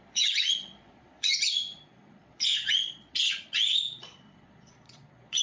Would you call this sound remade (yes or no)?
yes